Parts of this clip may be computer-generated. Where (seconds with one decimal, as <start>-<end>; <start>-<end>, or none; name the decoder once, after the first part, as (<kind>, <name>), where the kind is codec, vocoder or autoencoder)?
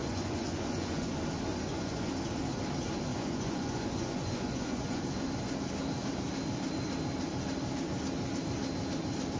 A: 0.0-1.1 (vocoder, Vocos); 1.5-2.1; 3.1-5.0